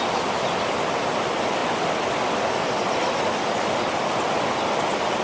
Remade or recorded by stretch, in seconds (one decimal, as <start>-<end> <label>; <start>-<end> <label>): 0.0-5.2 recorded